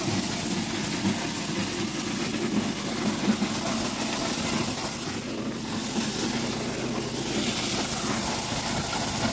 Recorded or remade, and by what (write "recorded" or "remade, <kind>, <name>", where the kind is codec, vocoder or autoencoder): recorded